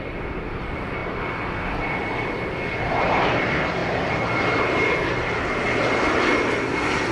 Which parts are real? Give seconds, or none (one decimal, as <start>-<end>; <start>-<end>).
1.0-1.9